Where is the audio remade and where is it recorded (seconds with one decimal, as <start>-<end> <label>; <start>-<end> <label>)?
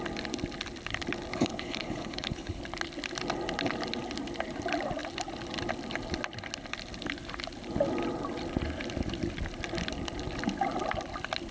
0.0-1.3 recorded; 1.3-2.6 remade; 2.6-11.5 recorded